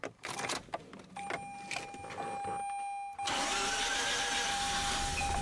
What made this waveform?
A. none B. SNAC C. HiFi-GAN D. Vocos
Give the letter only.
A